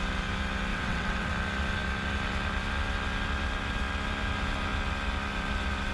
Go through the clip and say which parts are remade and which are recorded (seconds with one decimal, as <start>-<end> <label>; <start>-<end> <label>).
0.0-0.7 recorded; 0.7-1.3 remade; 1.3-5.9 recorded